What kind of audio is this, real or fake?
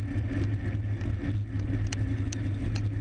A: real